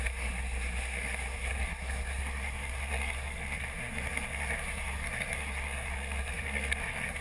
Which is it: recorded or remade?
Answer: remade